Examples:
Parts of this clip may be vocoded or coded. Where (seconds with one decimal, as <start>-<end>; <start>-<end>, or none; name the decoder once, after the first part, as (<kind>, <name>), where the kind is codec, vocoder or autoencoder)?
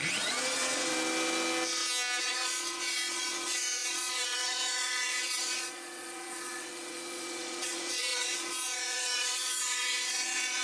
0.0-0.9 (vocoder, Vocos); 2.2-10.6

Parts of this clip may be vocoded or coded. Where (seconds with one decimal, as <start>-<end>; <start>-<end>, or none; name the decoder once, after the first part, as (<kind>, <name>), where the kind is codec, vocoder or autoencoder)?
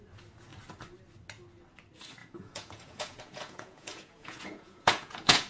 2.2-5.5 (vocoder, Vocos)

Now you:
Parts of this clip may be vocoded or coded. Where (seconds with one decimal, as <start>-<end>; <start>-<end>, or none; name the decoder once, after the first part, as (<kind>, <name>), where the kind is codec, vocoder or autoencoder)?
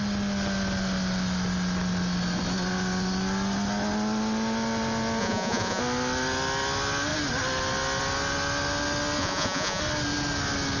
5.2-5.8 (vocoder, Vocos); 9.2-9.8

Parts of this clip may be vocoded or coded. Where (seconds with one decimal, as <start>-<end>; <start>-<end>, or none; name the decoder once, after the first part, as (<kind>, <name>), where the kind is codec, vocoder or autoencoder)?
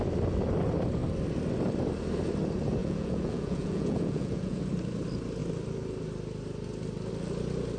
2.8-4.6 (vocoder, Vocos)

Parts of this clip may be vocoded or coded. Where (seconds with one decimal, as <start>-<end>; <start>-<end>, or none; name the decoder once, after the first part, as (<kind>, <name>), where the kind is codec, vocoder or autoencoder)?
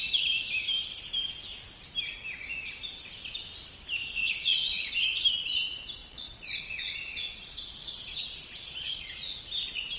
4.0-4.9 (vocoder, Vocos); 6.0-9.4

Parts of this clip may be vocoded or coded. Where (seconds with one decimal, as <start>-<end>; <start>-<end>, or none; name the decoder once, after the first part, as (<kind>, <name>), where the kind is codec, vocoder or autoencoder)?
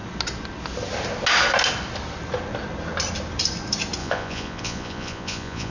4.0-5.7 (vocoder, Vocos)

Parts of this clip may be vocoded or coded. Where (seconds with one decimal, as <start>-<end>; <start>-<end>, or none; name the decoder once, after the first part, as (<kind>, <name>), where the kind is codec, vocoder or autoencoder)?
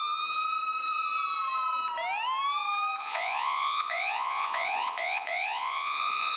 3.0-6.4 (vocoder, Vocos)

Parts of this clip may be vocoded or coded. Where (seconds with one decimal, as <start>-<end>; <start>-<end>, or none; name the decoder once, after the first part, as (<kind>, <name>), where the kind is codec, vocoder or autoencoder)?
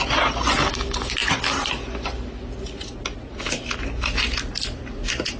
none